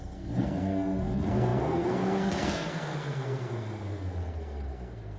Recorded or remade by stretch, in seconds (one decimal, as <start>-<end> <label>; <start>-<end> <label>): 0.0-5.2 remade